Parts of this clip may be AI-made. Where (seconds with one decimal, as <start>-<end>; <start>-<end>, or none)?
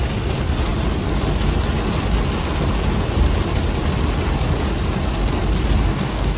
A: 5.9-6.4